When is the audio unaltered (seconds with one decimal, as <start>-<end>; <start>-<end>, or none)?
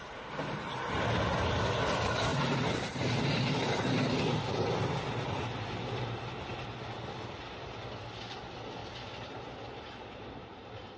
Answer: 0.0-2.3; 3.1-8.8